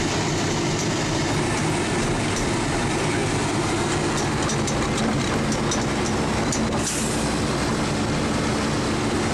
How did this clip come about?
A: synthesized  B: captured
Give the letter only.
B